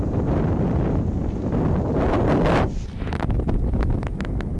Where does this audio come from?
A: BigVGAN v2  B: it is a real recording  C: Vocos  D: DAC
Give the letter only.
B